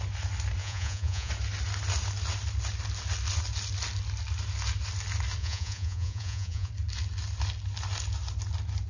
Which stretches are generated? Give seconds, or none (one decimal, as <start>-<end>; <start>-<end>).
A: 0.6-1.3; 5.4-6.7